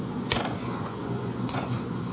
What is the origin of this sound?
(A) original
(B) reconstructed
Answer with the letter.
B